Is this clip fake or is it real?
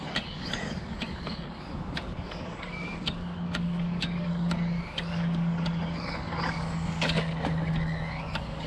fake